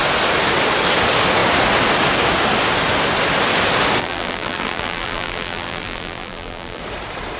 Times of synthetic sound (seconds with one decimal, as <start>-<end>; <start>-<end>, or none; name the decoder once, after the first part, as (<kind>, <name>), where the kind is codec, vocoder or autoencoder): 4.0-6.8 (vocoder, BigVGAN v2)